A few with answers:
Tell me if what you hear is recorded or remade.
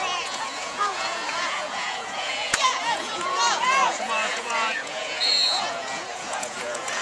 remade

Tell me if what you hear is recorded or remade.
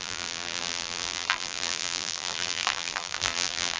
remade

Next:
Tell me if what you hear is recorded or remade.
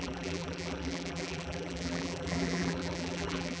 remade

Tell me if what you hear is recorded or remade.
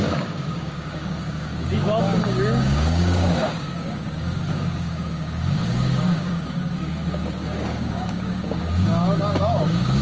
remade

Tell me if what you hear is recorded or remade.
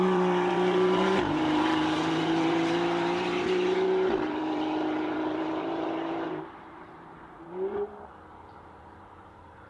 remade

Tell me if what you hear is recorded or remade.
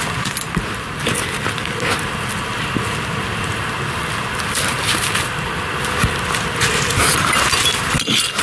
recorded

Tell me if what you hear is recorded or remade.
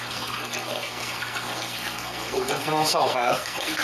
remade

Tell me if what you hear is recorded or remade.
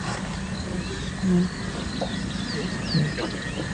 recorded